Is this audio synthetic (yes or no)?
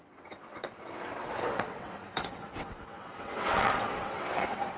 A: yes